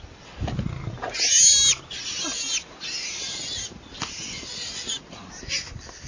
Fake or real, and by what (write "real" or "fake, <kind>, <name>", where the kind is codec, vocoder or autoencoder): real